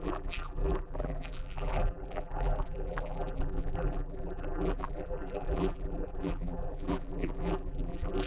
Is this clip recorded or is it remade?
remade